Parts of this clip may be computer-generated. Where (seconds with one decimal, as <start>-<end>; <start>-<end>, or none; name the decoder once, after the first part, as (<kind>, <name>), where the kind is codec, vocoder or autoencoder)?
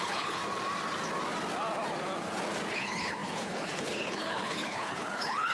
0.0-0.4 (codec, HILCodec); 2.7-5.5